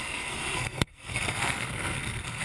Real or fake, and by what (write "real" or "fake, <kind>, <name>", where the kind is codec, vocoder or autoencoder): fake, codec, SNAC